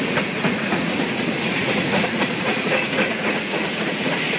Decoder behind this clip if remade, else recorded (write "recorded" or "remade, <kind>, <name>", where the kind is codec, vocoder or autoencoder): remade, vocoder, Vocos